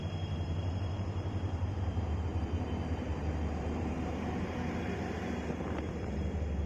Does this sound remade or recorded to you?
remade